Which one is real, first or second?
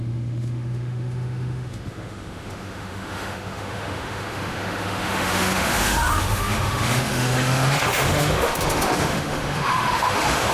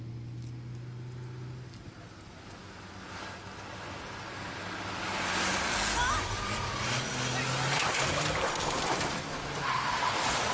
second